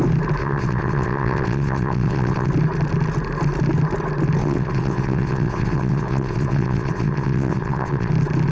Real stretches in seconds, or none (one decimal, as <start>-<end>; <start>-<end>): 0.0-0.4; 2.5-4.4; 8.1-8.5